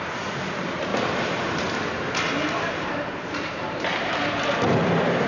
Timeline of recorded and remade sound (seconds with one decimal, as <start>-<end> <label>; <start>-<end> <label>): 0.0-0.9 recorded; 0.9-4.1 remade; 4.1-5.3 recorded